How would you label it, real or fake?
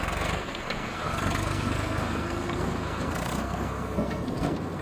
fake